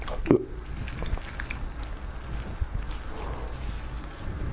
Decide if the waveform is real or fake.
real